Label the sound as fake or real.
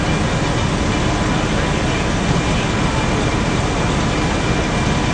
real